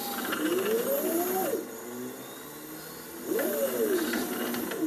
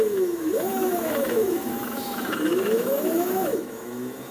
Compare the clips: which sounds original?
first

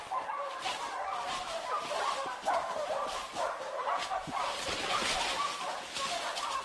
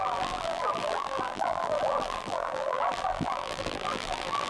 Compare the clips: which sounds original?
first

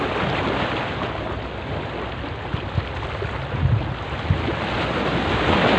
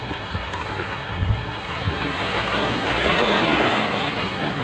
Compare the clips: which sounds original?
first